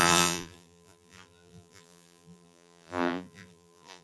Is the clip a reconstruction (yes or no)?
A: yes